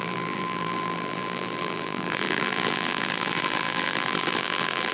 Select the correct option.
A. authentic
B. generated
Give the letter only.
B